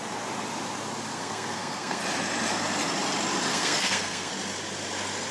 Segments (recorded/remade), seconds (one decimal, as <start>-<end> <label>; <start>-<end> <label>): 0.0-1.1 recorded; 1.1-2.0 remade; 2.0-3.5 recorded; 3.5-4.3 remade; 4.3-5.3 recorded